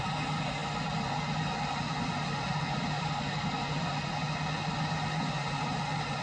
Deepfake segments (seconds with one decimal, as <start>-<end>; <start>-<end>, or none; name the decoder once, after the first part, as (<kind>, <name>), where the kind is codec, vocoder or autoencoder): none